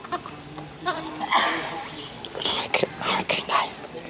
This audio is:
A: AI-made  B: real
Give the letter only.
B